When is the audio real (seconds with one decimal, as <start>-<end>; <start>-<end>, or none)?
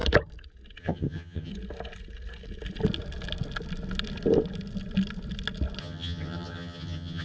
0.0-0.8; 1.5-5.8